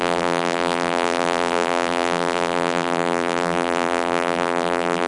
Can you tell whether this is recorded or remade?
remade